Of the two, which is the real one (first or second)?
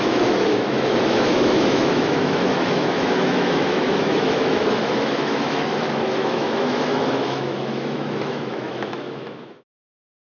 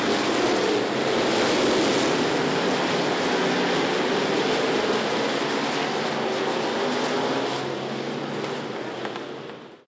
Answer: second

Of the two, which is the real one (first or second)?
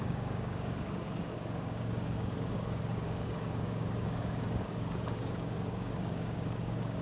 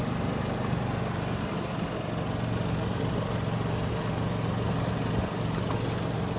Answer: second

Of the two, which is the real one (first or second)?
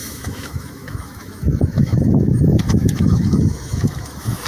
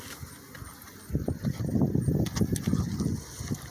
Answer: second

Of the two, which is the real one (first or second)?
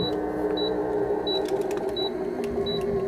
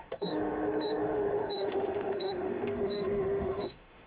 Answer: first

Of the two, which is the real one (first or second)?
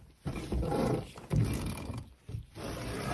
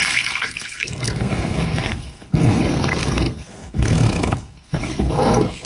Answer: first